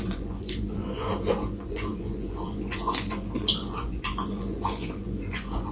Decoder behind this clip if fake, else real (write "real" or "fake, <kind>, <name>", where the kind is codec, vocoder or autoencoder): fake, vocoder, Vocos